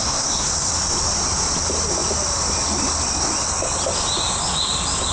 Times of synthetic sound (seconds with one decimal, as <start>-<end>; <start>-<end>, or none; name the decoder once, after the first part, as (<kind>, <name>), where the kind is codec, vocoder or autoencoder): 0.0-0.7 (codec, SNAC)